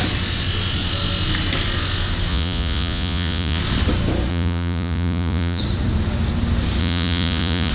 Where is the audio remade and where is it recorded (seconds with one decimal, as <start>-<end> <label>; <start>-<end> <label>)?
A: 0.0-2.3 recorded; 2.3-3.6 remade; 3.6-4.3 recorded; 4.3-5.6 remade; 5.6-6.8 recorded; 6.8-7.7 remade